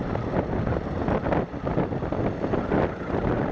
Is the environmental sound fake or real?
real